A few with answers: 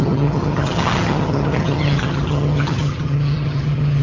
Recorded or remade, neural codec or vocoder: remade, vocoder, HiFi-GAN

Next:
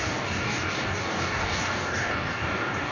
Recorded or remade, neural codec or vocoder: remade, codec, DAC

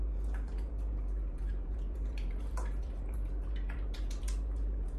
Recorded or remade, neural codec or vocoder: remade, vocoder, BigVGAN v2